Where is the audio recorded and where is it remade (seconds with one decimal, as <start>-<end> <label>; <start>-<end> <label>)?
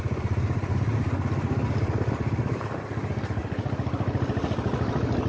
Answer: 0.0-3.4 recorded; 3.4-5.3 remade